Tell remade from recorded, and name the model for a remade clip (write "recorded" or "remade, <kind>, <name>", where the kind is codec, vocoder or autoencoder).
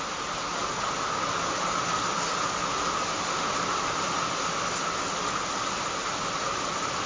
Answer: recorded